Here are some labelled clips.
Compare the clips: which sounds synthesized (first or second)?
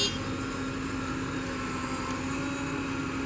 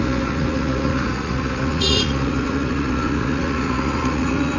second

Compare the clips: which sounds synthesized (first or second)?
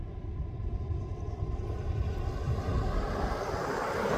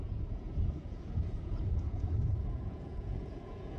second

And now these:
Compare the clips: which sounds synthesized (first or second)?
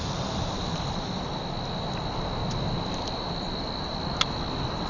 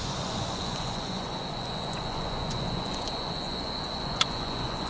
second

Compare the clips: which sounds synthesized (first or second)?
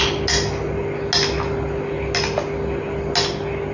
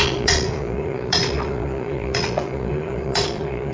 second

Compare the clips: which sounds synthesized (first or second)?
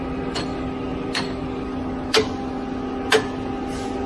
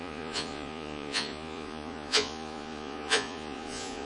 second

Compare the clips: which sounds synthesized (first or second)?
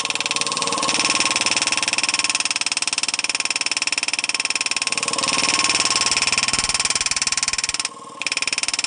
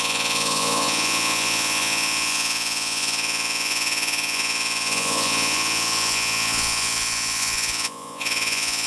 second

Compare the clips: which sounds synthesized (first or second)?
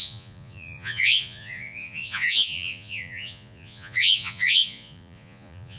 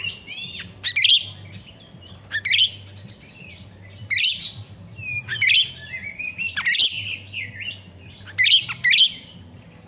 first